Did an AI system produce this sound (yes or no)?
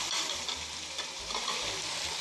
yes